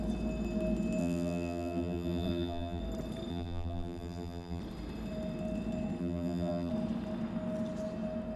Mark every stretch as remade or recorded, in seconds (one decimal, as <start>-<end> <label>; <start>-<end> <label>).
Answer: 0.0-1.0 recorded; 1.0-2.8 remade; 2.8-3.3 recorded; 3.3-4.6 remade; 4.6-6.0 recorded; 6.0-6.7 remade; 6.7-8.4 recorded